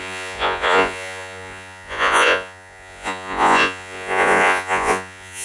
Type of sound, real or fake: fake